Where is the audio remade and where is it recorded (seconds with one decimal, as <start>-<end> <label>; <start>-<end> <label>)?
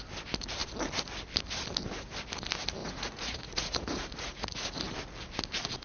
0.0-2.8 recorded; 2.8-4.8 remade; 4.8-5.8 recorded